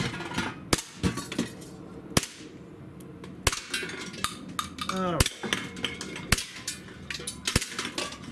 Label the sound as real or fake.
real